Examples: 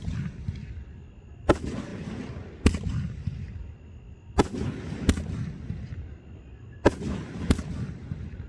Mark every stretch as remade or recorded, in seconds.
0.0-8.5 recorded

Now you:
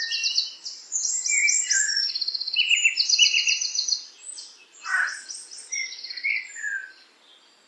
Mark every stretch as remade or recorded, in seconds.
0.0-7.7 recorded

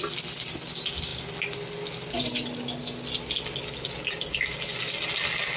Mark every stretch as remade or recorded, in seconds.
0.0-5.6 recorded

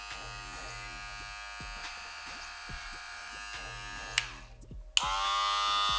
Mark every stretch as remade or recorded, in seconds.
0.0-1.8 recorded; 1.8-3.3 remade; 3.3-6.0 recorded

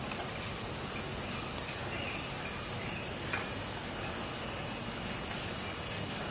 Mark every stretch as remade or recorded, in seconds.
0.0-6.3 recorded

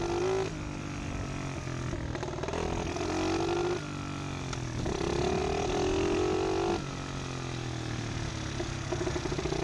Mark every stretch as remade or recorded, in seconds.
0.0-9.6 recorded